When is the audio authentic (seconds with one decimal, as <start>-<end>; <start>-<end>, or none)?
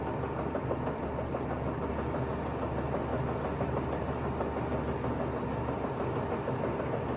0.0-7.2